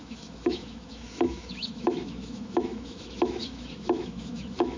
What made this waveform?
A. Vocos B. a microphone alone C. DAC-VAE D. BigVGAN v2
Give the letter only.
C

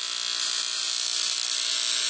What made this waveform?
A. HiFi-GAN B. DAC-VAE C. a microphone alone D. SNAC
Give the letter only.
C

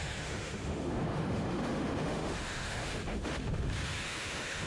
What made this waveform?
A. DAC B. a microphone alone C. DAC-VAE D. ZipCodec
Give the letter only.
C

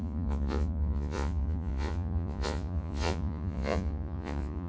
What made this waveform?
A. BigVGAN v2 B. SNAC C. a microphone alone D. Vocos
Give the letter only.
D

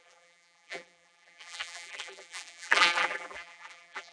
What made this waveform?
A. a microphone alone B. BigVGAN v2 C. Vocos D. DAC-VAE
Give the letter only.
B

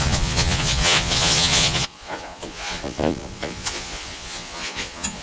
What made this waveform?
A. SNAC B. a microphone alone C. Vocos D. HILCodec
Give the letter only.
C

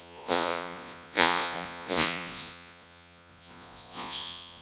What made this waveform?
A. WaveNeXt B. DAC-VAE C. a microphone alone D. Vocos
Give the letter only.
D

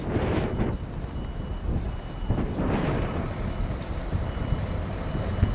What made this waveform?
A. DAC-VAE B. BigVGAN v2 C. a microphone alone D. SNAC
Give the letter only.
B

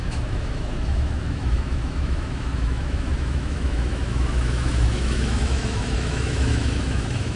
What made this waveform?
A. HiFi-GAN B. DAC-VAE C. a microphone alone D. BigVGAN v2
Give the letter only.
B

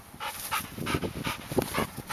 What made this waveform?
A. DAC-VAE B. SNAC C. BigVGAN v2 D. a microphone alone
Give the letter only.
D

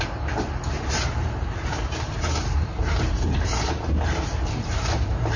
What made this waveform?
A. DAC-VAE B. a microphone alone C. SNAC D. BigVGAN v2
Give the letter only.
D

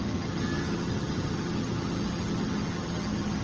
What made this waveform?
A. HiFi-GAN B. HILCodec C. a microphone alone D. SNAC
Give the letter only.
A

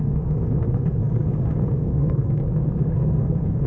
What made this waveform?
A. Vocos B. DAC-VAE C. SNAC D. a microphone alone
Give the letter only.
C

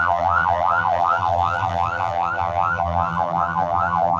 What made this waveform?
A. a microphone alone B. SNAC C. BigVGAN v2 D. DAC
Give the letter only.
C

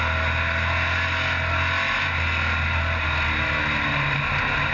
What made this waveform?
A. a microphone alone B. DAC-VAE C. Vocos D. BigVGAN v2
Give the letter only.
A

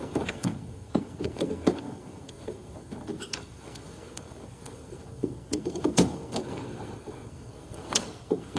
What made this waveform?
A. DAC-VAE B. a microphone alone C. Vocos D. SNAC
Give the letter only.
D